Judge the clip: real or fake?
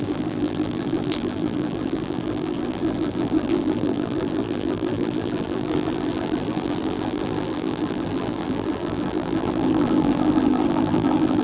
fake